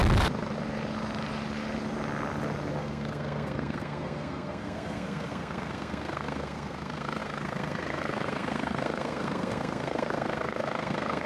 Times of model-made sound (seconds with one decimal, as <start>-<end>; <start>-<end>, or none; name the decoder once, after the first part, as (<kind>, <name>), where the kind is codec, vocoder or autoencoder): 2.8-11.3 (codec, SNAC)